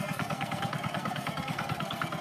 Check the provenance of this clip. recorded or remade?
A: remade